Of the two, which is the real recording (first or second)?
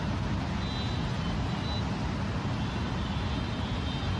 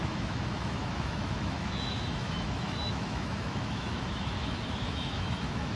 first